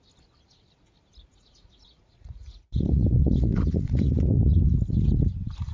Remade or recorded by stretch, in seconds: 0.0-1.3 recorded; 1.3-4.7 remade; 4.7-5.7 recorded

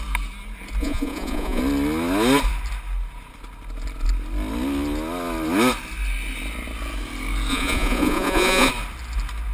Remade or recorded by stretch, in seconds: 0.0-0.8 recorded; 0.8-1.6 remade; 1.6-7.5 recorded; 7.5-8.7 remade; 8.7-9.5 recorded